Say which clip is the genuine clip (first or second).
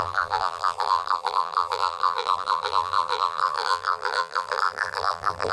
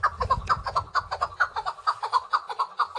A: second